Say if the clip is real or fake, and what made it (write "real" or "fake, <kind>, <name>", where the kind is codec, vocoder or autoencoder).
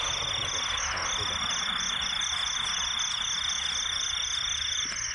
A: real